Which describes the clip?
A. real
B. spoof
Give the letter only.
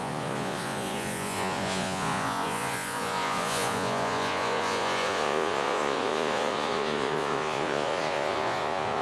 B